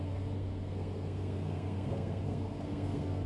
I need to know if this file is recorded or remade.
remade